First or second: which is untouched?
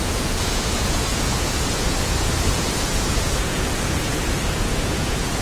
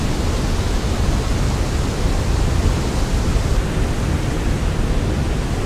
second